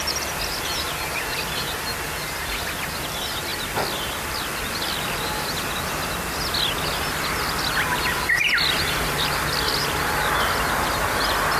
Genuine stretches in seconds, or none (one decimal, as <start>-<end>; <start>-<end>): 0.0-11.6